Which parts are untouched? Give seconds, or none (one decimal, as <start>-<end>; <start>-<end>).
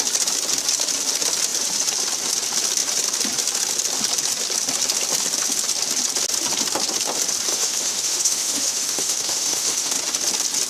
0.0-7.5; 9.9-10.7